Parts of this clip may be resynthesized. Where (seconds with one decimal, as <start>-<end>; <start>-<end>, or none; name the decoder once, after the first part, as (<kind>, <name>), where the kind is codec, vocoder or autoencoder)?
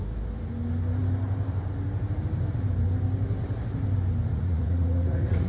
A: 4.3-5.5 (vocoder, Vocos)